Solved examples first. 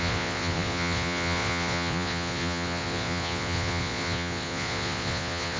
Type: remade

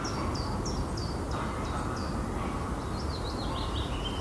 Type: recorded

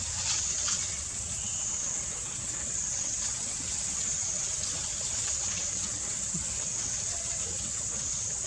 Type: remade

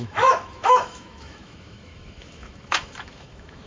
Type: remade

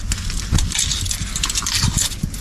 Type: recorded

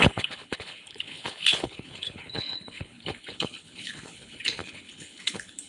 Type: remade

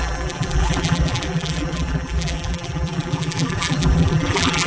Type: remade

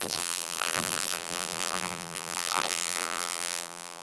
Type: remade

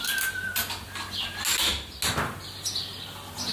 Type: recorded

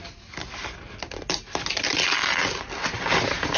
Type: recorded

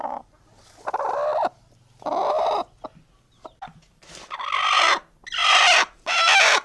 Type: recorded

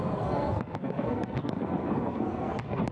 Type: remade